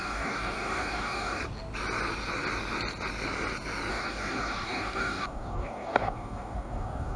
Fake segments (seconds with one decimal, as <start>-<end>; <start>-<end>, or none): 0.0-1.4; 3.9-7.2